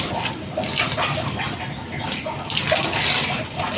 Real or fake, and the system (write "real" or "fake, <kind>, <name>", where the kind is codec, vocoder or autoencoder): real